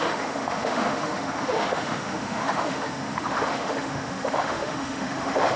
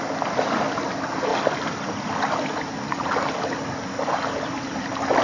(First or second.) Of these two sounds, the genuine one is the second